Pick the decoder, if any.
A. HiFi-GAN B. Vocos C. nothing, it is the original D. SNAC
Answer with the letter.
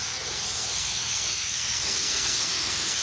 D